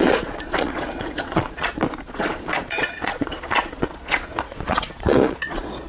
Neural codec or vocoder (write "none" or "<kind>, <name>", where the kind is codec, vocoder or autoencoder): vocoder, Vocos